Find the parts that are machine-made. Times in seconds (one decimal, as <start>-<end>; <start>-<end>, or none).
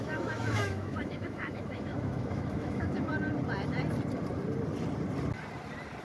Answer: 0.0-3.1